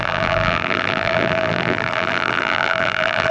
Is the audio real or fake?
fake